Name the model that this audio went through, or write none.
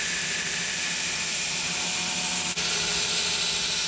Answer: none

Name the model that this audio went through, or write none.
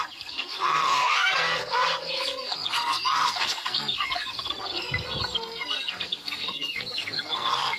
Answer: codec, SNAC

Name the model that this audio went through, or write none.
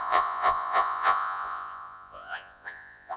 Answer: vocoder, Vocos